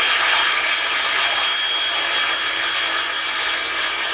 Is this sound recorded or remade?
recorded